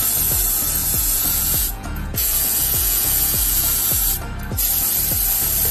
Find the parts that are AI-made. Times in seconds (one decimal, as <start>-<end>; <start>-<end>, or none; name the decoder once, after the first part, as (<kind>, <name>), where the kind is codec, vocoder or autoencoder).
0.8-3.8 (vocoder, Vocos)